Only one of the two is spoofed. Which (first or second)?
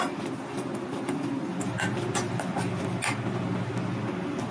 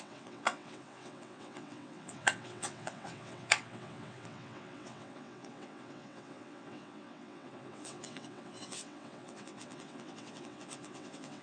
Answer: second